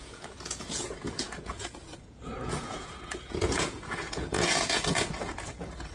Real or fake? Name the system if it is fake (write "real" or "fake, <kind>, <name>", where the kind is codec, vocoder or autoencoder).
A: fake, vocoder, Vocos